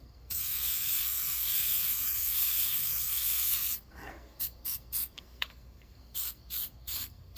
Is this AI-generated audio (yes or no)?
yes